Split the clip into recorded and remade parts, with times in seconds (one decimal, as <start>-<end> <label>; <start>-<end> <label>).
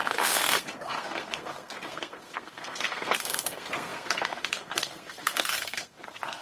0.0-6.4 remade